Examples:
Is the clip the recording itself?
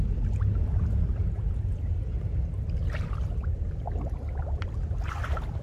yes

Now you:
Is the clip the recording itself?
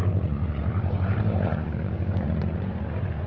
no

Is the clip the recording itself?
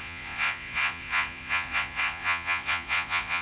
no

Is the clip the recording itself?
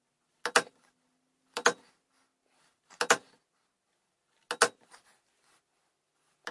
yes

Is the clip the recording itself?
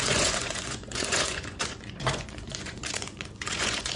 no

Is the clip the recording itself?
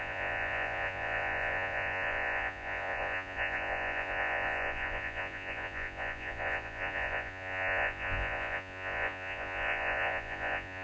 no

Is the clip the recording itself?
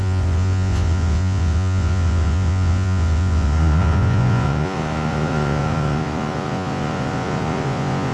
no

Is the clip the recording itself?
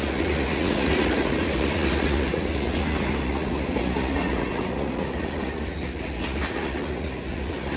no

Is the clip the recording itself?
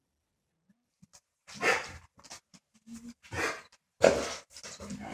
yes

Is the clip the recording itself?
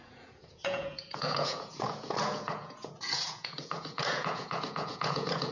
no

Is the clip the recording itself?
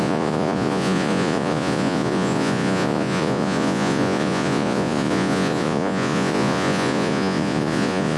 no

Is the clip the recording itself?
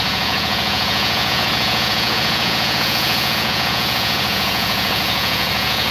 no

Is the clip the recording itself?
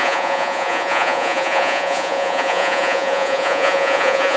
no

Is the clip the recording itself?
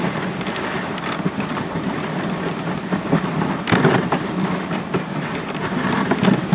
yes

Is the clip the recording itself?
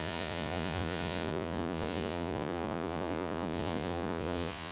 no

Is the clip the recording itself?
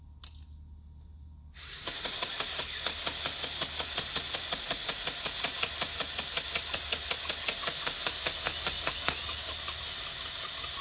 yes